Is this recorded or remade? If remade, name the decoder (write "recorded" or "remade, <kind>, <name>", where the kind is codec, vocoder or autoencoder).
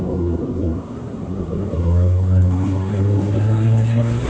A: remade, codec, SNAC